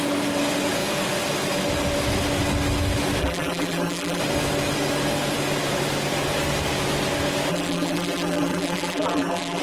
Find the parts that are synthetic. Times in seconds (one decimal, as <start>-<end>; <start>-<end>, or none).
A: 3.2-4.2; 7.5-9.6